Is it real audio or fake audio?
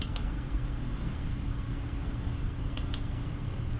fake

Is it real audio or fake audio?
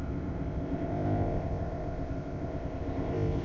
fake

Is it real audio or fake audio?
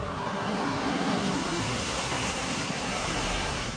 fake